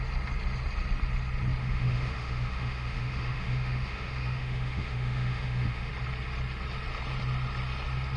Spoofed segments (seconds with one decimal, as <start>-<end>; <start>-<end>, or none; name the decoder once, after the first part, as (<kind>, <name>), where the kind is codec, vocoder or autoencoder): 1.6-5.9 (autoencoder, DAC-VAE)